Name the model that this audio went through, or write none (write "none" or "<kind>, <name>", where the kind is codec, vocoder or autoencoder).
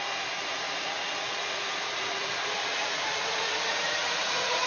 vocoder, Vocos